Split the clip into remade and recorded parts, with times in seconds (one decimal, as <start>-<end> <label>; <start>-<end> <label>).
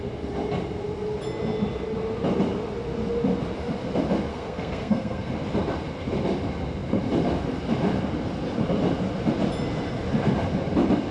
0.0-4.3 recorded; 4.3-5.3 remade; 5.3-11.1 recorded